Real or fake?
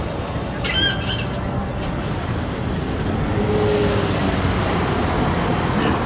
real